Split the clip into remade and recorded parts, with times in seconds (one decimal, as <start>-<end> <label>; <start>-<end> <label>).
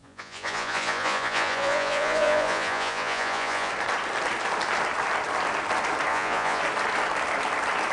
0.0-3.7 remade; 3.7-6.1 recorded; 6.1-6.6 remade; 6.6-7.9 recorded